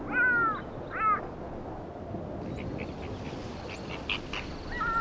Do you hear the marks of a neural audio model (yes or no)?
no